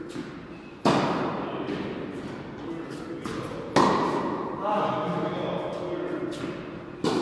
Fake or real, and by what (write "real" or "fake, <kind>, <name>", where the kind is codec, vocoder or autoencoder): real